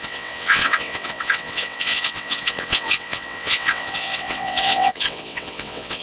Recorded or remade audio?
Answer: remade